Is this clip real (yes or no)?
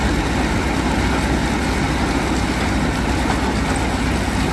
yes